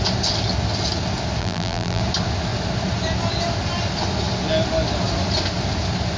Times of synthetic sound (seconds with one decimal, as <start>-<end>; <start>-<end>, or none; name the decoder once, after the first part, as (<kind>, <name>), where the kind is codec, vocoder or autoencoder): 1.4-2.0 (vocoder, BigVGAN v2)